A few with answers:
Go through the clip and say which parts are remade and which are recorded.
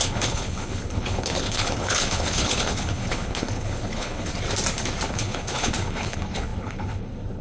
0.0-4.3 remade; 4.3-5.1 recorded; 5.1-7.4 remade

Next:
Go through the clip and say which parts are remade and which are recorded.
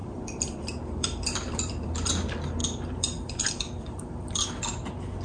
0.0-2.1 remade; 2.1-2.6 recorded; 2.6-4.5 remade; 4.5-5.2 recorded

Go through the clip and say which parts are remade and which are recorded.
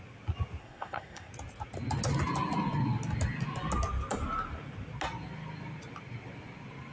0.0-0.6 recorded; 0.6-1.3 remade; 1.3-6.9 recorded